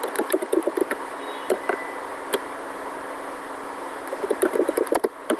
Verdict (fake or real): real